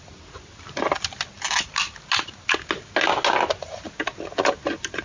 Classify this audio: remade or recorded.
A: recorded